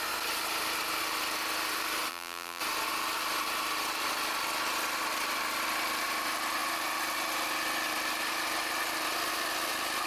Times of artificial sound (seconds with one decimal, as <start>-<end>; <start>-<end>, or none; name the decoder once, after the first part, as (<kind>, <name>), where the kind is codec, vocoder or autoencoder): 2.1-2.6 (vocoder, BigVGAN v2)